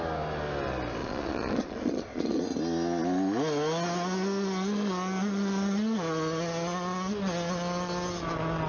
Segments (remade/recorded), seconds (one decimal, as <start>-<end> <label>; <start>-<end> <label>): 0.0-1.0 recorded; 1.0-2.4 remade; 2.4-8.7 recorded